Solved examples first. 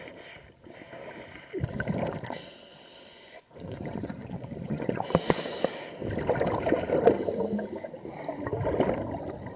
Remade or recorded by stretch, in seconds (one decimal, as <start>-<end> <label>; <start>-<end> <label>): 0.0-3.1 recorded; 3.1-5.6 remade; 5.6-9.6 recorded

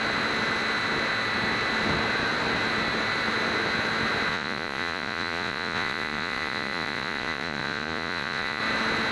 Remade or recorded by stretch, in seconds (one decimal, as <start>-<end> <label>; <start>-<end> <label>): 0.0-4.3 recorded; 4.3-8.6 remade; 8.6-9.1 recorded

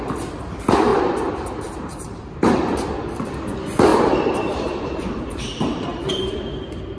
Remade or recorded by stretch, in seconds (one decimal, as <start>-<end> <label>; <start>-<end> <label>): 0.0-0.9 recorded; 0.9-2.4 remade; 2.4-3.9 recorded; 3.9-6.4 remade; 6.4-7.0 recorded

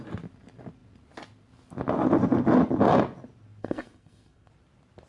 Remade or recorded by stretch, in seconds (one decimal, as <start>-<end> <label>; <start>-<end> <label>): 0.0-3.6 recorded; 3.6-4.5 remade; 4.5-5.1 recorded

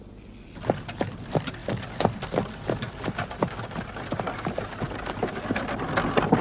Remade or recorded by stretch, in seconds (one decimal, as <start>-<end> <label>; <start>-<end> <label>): 0.0-6.4 recorded

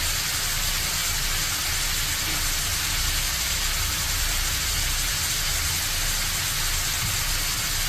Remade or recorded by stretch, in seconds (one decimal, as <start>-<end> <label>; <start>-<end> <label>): 0.0-2.7 recorded; 2.7-5.1 remade; 5.1-7.9 recorded